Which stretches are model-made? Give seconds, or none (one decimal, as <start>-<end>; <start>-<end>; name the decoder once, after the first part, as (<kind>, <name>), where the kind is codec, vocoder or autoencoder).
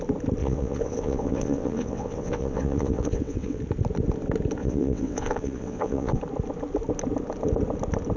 0.4-3.6 (vocoder, WaveNeXt); 4.6-6.2